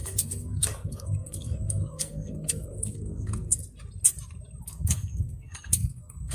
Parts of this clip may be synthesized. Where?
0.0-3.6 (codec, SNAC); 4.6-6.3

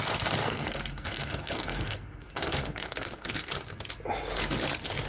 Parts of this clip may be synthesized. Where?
0.4-3.5 (codec, SNAC)

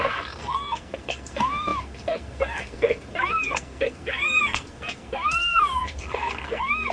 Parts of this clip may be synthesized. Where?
0.0-6.9 (codec, SNAC)

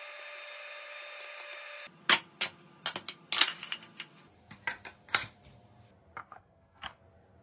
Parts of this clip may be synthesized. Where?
6.2-7.0 (codec, SNAC)

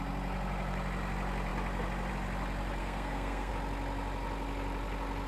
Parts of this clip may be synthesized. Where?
2.8-3.5 (codec, SNAC)

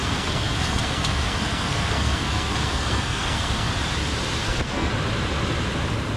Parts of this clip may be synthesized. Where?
0.0-3.7 (codec, SNAC); 4.4-4.9

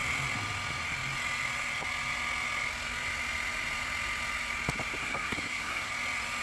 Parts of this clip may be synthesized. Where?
5.0-5.9 (codec, SNAC)

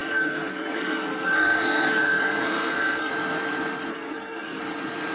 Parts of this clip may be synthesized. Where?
0.0-3.1 (codec, SNAC); 3.9-4.6